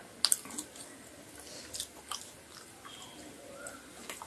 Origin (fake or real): real